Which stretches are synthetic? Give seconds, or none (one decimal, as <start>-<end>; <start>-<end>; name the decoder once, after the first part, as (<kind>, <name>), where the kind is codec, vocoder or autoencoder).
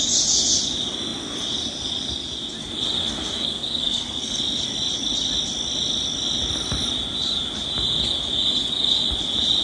3.0-4.4 (codec, SNAC)